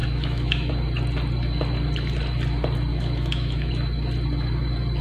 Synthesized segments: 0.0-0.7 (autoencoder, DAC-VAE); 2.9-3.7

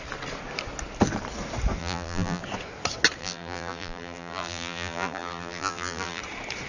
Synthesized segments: 1.8-2.4 (vocoder, BigVGAN v2); 3.2-6.2

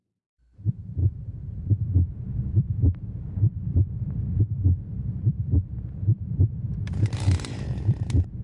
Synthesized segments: 0.0-8.4 (vocoder, BigVGAN v2)

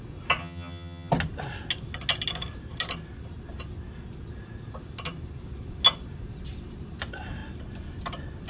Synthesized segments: 0.4-1.1 (vocoder, HiFi-GAN)